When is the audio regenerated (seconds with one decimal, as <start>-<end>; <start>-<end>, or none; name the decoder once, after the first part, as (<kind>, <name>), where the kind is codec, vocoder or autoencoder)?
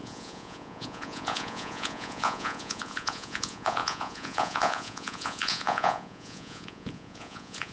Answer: 0.0-7.7 (vocoder, Vocos)